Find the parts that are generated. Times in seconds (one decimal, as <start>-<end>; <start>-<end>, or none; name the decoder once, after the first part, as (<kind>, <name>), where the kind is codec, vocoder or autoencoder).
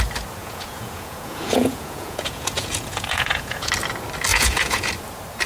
0.4-3.7 (vocoder, Vocos); 4.3-4.9